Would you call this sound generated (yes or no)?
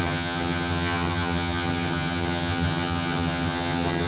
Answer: yes